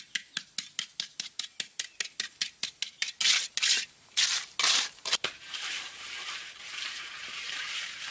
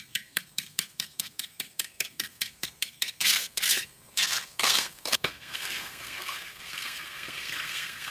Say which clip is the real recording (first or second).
first